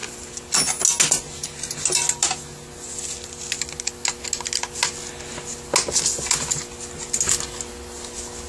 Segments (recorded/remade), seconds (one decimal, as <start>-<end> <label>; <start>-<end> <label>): 0.0-8.5 recorded